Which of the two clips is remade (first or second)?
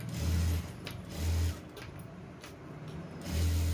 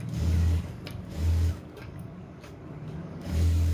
second